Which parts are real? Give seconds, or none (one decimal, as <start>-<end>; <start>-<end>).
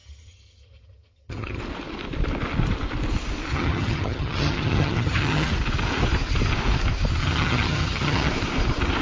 1.6-3.5; 5.5-7.2; 8.3-9.0